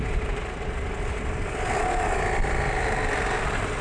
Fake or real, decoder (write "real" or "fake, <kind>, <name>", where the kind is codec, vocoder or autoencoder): real